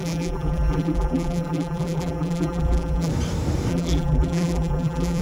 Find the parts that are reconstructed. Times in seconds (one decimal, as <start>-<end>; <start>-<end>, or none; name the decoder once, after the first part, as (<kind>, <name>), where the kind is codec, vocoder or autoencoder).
0.0-3.1 (vocoder, BigVGAN v2); 3.7-5.2